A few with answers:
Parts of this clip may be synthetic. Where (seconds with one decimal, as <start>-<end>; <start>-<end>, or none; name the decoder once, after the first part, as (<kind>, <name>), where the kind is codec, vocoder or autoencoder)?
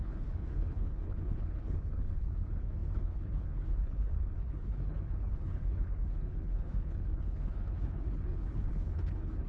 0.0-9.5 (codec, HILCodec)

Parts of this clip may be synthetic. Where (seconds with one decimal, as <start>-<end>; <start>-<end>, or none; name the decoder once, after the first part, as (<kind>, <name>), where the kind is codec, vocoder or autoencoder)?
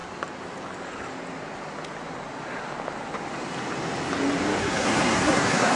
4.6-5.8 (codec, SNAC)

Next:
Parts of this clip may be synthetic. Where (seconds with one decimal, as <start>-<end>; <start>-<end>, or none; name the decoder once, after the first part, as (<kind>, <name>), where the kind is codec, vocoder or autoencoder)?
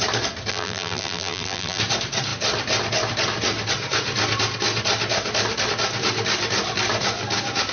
0.5-1.8 (vocoder, BigVGAN v2)